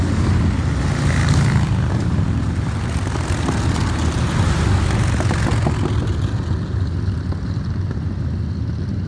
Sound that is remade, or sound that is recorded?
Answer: recorded